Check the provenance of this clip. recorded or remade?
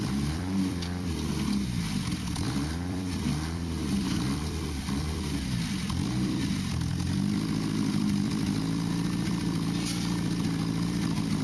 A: remade